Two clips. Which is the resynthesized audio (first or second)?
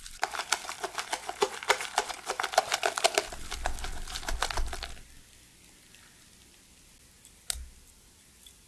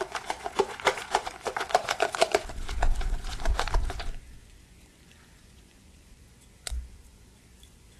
second